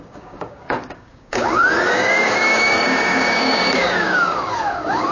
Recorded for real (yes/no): no